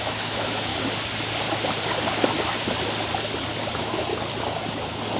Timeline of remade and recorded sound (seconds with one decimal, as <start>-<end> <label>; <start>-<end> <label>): 0.0-0.7 remade; 0.7-3.6 recorded; 3.6-4.1 remade; 4.1-5.2 recorded